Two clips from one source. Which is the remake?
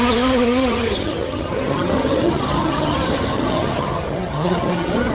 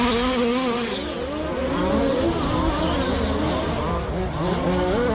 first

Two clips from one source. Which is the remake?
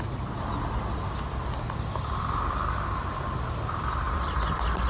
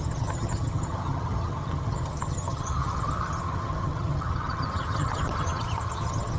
second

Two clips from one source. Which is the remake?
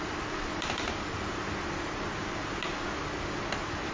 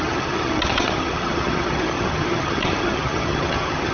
second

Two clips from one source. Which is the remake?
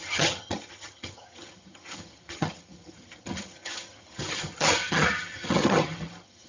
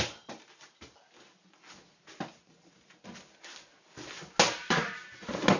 first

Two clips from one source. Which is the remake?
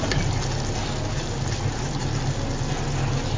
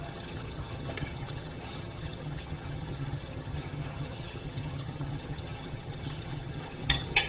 second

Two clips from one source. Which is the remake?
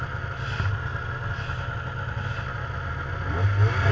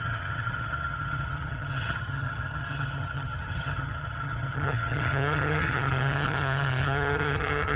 second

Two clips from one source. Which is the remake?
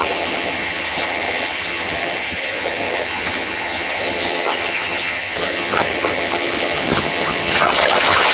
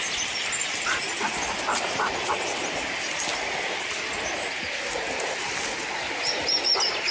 first